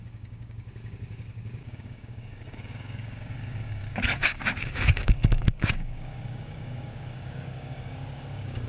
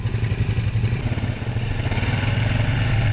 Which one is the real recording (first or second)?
second